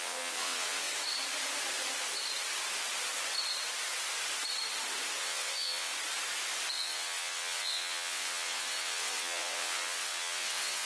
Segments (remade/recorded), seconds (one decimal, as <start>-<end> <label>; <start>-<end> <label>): 0.0-0.9 remade; 0.9-5.2 recorded; 5.2-5.9 remade; 5.9-6.7 recorded; 6.7-10.9 remade